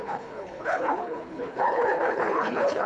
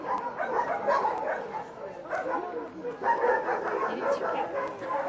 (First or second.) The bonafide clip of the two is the second